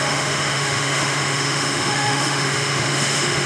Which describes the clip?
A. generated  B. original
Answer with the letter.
A